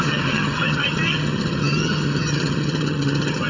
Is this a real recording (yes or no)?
no